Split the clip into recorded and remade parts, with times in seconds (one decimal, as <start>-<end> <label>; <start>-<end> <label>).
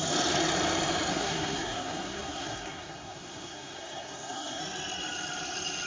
0.0-1.1 recorded; 1.1-4.6 remade; 4.6-5.9 recorded